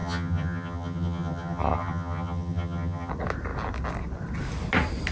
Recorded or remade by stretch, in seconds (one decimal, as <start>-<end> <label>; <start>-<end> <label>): 0.0-3.1 remade; 3.1-5.1 recorded